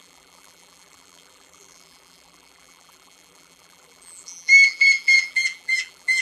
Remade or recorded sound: remade